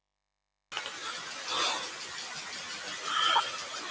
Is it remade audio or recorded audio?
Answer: recorded